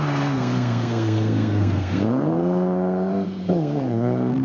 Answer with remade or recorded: remade